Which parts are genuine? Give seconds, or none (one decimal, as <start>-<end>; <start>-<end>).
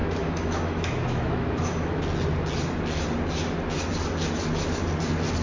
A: 2.0-5.4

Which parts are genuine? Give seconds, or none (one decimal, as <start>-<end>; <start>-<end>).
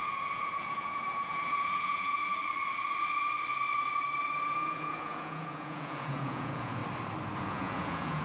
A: 2.2-4.5; 6.8-7.4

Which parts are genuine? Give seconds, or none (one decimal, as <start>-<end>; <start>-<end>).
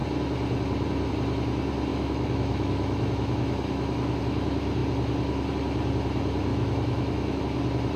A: 0.0-1.9; 4.2-6.5; 7.4-8.0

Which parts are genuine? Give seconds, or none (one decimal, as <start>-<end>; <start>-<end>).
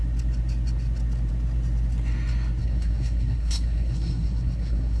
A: 0.0-2.6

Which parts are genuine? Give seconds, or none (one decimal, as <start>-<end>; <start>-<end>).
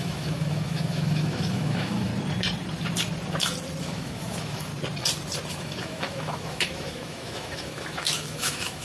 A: 2.1-3.8; 4.7-5.5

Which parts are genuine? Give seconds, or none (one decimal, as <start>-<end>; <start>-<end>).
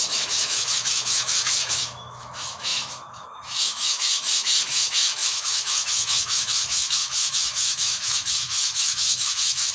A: none